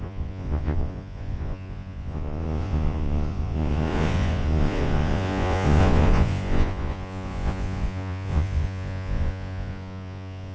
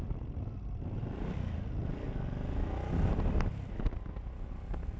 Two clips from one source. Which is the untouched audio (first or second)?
second